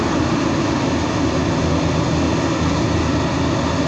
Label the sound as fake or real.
real